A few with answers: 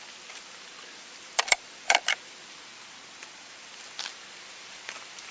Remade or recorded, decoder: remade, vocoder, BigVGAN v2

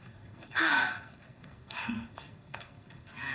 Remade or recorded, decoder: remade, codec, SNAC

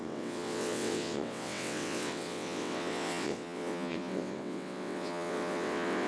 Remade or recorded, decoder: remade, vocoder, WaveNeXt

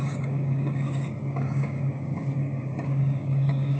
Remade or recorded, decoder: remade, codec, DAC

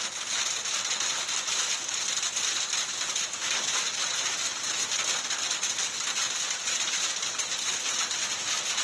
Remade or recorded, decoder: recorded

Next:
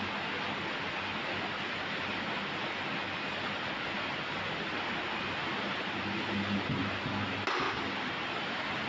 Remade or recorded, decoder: recorded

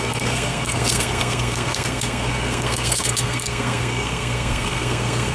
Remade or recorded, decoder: remade, codec, SNAC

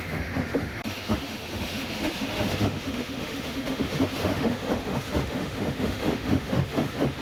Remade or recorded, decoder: remade, autoencoder, DAC-VAE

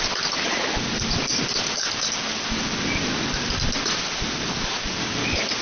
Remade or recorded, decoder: recorded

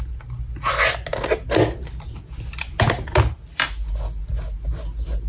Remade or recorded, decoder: recorded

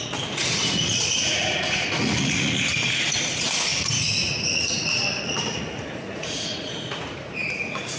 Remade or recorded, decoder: remade, vocoder, Vocos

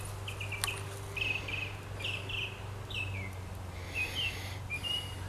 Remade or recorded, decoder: recorded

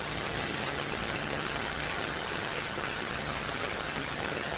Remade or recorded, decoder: remade, vocoder, HiFi-GAN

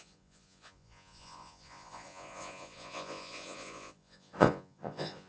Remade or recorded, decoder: remade, vocoder, Vocos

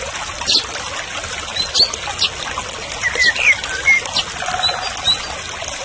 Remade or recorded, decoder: recorded